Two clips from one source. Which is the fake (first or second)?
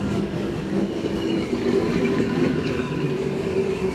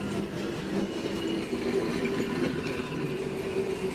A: first